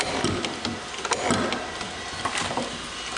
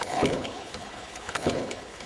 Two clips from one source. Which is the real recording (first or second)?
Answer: first